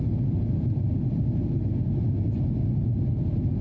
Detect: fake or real real